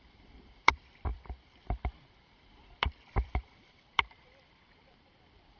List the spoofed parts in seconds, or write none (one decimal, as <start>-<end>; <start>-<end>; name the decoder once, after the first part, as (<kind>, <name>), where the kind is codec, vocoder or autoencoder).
0.0-5.6 (vocoder, BigVGAN v2)